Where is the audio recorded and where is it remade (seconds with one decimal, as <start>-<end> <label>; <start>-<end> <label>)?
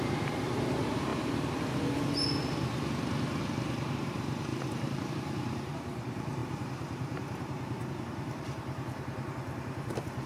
0.0-1.1 remade; 1.1-3.4 recorded; 3.4-10.3 remade